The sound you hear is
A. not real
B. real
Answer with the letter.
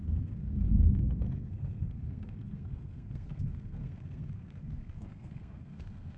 A